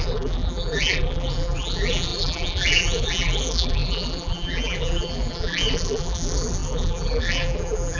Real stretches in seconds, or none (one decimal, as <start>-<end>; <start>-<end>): none